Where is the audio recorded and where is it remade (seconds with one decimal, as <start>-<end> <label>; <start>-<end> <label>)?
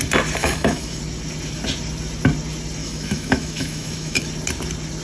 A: 0.0-0.4 recorded; 0.4-1.0 remade; 1.0-2.8 recorded; 2.8-4.3 remade; 4.3-5.0 recorded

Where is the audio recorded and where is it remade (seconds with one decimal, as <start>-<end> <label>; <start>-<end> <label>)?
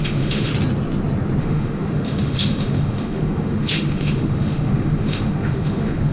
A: 0.0-0.5 remade; 0.5-1.4 recorded; 1.4-6.1 remade